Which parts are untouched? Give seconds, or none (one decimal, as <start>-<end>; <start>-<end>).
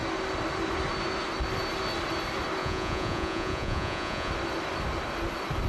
0.0-2.6; 4.3-5.7